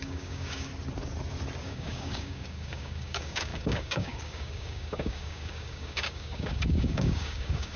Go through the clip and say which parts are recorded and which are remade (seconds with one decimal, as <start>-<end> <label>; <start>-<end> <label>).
0.0-0.7 remade; 0.7-1.6 recorded; 1.6-7.8 remade